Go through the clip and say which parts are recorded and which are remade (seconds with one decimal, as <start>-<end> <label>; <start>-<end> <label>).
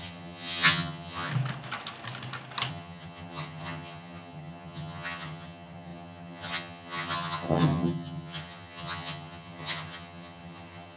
0.0-1.3 remade; 1.3-2.7 recorded; 2.7-11.0 remade